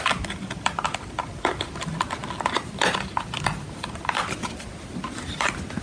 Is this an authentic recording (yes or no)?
yes